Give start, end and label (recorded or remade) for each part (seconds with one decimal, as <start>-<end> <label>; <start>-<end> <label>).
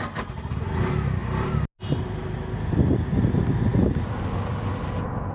0.0-5.3 recorded